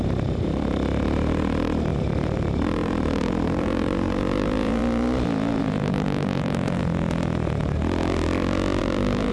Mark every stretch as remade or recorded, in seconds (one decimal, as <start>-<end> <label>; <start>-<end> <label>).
0.0-4.8 remade; 4.8-5.6 recorded; 5.6-6.8 remade; 6.8-8.8 recorded; 8.8-9.3 remade

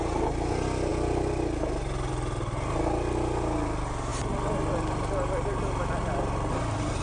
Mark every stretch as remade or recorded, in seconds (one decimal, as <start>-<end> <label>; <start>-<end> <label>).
0.0-7.0 recorded

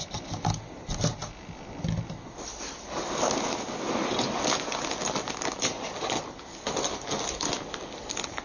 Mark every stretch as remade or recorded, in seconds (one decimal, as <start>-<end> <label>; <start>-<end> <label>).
0.0-8.4 recorded

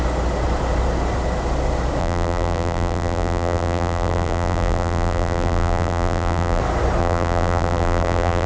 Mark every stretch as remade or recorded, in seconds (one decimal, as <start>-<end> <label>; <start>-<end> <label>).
0.0-2.0 recorded; 2.0-6.6 remade; 6.6-7.0 recorded; 7.0-8.5 remade

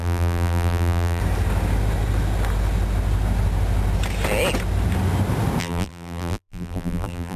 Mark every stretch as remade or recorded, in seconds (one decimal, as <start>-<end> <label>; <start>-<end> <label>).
0.0-1.2 remade; 1.2-5.6 recorded; 5.6-7.4 remade

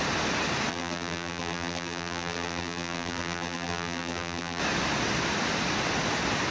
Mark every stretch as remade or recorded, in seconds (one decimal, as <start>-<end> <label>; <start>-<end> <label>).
0.0-0.7 recorded; 0.7-4.6 remade; 4.6-6.5 recorded